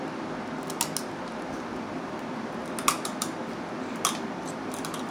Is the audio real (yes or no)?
yes